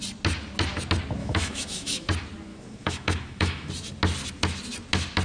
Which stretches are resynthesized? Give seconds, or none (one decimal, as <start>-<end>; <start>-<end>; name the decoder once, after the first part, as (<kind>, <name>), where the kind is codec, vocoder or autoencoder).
1.2-2.1 (autoencoder, DAC-VAE); 2.5-3.7